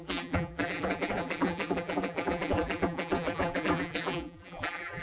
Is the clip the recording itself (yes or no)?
no